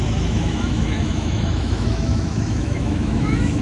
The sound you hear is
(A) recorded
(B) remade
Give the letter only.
B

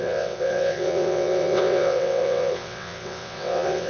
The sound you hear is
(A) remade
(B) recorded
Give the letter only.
A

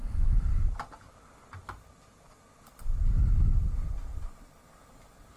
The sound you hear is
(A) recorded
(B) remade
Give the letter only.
A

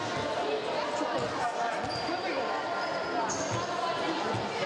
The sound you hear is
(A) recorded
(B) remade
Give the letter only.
A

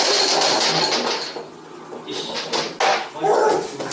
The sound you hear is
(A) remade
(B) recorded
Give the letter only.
B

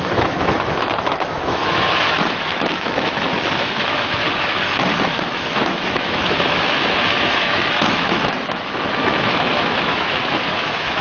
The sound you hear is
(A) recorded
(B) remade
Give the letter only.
B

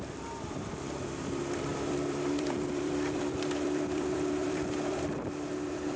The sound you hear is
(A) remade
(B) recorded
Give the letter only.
A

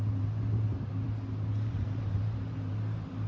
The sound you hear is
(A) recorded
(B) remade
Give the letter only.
B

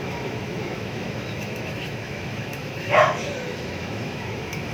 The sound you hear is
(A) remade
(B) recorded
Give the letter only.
A